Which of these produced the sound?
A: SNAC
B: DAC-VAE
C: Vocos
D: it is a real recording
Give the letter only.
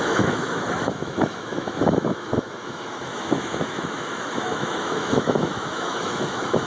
B